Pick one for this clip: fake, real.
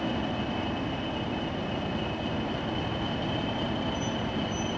real